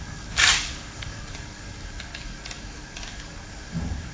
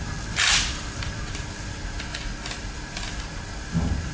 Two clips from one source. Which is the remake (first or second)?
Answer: first